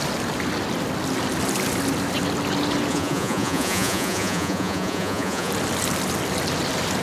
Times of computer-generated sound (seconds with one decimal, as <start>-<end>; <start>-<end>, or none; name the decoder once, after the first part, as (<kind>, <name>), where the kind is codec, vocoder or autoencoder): 2.9-5.5 (vocoder, Vocos)